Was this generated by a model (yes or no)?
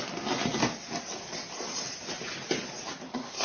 no